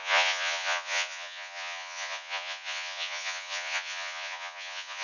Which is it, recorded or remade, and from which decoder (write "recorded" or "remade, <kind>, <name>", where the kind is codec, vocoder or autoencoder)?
remade, vocoder, Vocos